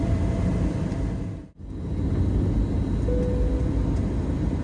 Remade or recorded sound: recorded